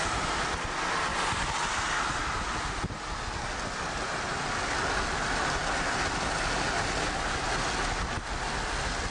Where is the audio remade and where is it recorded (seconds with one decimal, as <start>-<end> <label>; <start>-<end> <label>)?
0.0-9.1 recorded